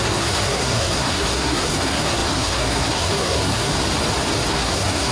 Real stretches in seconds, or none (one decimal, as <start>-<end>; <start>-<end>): 3.7-4.5